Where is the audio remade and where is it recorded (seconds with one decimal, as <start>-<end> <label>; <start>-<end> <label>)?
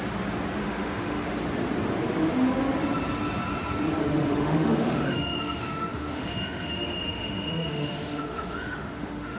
0.0-0.6 recorded; 0.6-1.3 remade; 1.3-4.1 recorded; 4.1-9.4 remade